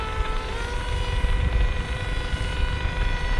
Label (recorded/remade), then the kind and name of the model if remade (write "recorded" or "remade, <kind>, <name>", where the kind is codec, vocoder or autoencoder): remade, vocoder, BigVGAN v2